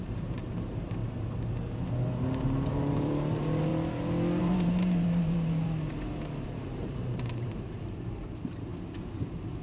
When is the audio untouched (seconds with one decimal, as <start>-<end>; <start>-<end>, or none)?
1.0-2.7; 3.7-4.4; 8.7-9.6